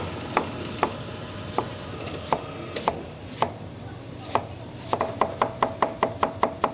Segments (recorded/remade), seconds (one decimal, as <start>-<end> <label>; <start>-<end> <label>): 0.0-6.7 remade

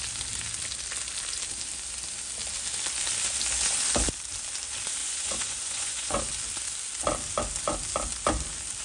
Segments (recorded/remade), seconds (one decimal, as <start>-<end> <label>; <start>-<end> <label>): 0.0-5.0 recorded; 5.0-6.2 remade; 6.2-8.8 recorded

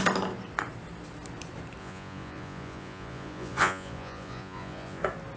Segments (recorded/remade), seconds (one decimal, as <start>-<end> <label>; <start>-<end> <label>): 0.0-1.8 recorded; 1.8-5.0 remade; 5.0-5.4 recorded

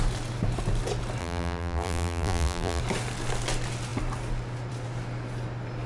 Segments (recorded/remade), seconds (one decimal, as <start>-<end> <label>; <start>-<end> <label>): 0.0-1.2 recorded; 1.2-2.8 remade; 2.8-5.9 recorded

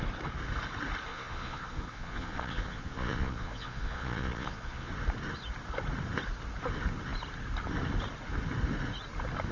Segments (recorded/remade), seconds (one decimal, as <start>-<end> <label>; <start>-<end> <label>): 0.0-1.1 recorded; 1.1-4.9 remade; 4.9-9.5 recorded

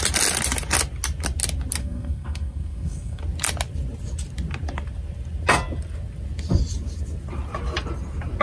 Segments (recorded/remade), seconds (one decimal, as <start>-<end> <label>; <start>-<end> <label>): 0.0-1.8 recorded; 1.8-3.2 remade; 3.2-8.4 recorded